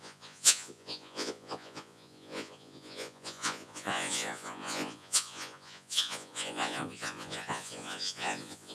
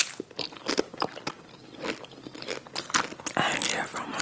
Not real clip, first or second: first